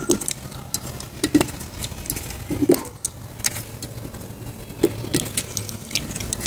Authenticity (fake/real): real